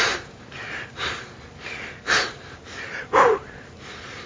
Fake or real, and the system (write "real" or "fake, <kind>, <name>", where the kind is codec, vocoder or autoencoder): fake, vocoder, BigVGAN v2